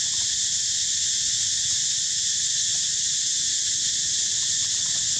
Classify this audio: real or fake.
real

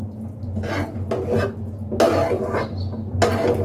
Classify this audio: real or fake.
real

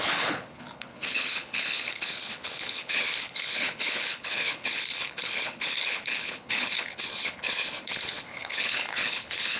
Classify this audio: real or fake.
fake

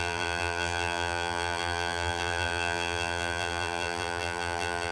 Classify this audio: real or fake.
fake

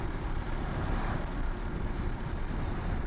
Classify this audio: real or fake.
real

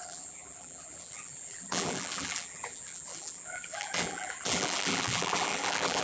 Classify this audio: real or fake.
fake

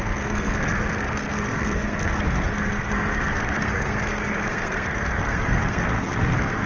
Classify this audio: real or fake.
fake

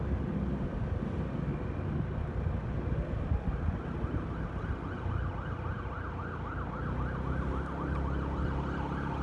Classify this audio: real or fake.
real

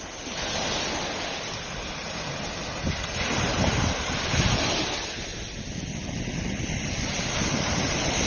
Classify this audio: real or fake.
real